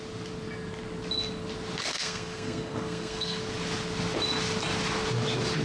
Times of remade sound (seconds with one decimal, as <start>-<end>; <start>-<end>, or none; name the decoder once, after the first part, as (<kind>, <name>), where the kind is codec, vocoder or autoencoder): 1.9-3.4 (codec, SNAC)